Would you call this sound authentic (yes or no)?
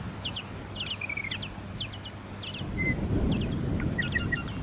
yes